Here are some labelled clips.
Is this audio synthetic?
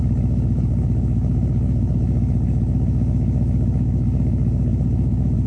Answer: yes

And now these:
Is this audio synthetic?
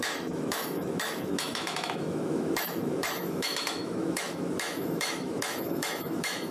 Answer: yes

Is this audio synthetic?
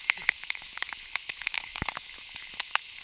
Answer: yes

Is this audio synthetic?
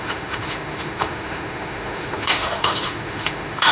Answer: yes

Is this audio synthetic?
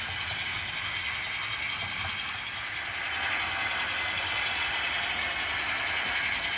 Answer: no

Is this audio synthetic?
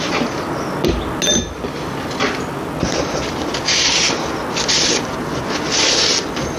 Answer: no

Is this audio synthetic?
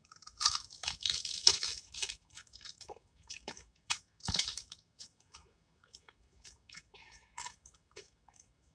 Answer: yes